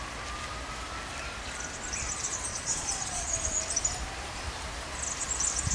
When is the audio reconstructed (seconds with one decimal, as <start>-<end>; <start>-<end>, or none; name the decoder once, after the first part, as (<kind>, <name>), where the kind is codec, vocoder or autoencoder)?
2.5-3.3 (vocoder, Vocos)